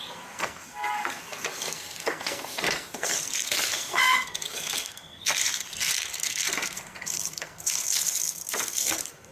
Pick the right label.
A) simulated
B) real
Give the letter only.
A